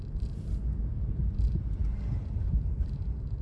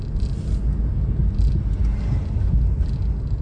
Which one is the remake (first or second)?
first